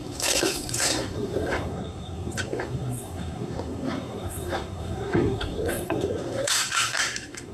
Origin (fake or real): fake